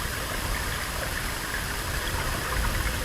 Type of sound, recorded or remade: recorded